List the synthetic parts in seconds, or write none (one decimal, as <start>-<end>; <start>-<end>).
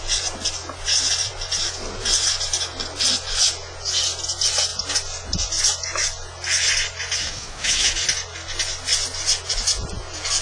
7.2-7.9